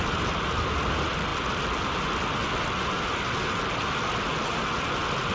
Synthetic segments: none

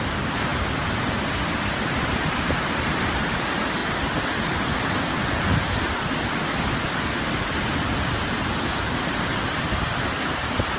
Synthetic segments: none

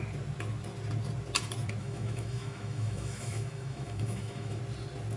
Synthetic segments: 1.8-4.6 (autoencoder, DAC-VAE)

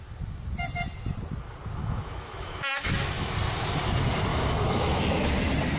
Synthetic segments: 1.8-3.3 (autoencoder, DAC-VAE); 4.3-5.3

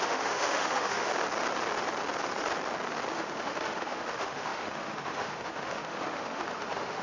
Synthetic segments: 0.0-1.1 (autoencoder, DAC-VAE); 3.1-7.0

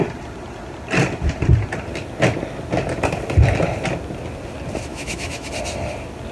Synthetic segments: 4.9-5.5 (autoencoder, DAC-VAE)

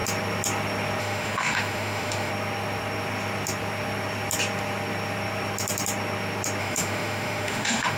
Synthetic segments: 1.0-2.3 (autoencoder, DAC-VAE); 6.6-8.0

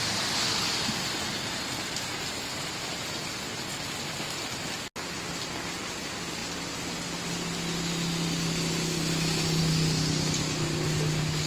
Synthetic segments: none